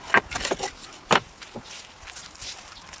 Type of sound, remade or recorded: recorded